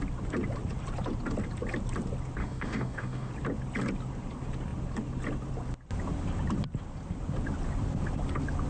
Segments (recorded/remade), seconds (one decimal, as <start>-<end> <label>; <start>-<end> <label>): 0.0-2.4 recorded; 2.4-3.3 remade; 3.3-8.7 recorded